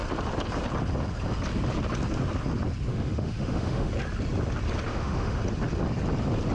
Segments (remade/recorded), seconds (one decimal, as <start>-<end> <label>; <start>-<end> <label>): 0.0-2.9 recorded; 2.9-3.9 remade; 3.9-4.9 recorded; 4.9-5.4 remade; 5.4-6.5 recorded